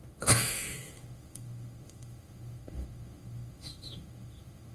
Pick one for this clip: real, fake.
fake